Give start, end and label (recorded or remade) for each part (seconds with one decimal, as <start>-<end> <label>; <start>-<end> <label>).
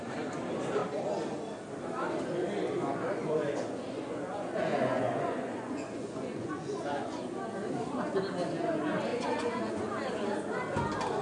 0.0-2.8 recorded; 2.8-7.2 remade; 7.2-9.1 recorded; 9.1-9.7 remade; 9.7-11.2 recorded